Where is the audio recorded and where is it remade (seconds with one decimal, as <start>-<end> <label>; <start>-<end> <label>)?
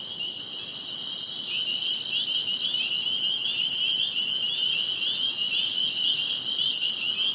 0.0-7.3 recorded